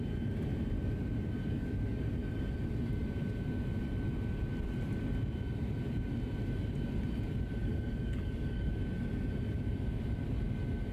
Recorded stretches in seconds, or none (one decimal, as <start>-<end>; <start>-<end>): 0.0-1.4; 2.0-7.6; 8.7-10.9